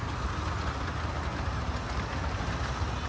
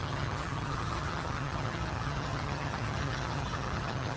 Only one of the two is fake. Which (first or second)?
second